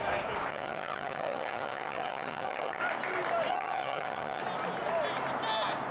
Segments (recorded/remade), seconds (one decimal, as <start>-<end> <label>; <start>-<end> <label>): 0.0-0.5 recorded; 0.5-2.8 remade; 2.8-3.5 recorded; 3.5-4.4 remade; 4.4-5.9 recorded